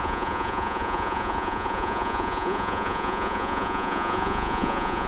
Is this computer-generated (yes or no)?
yes